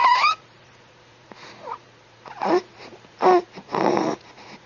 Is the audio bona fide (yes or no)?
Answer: no